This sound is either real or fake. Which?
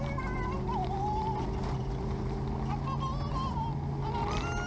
real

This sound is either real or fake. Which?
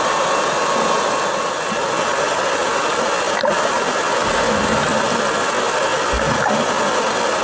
real